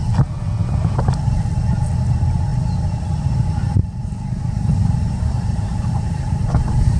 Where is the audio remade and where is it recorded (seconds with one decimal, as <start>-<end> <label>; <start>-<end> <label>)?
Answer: 0.0-0.6 recorded; 0.6-1.1 remade; 1.1-3.8 recorded; 3.8-7.0 remade